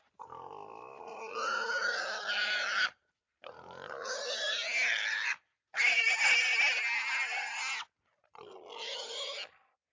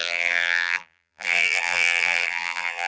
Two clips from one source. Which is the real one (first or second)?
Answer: first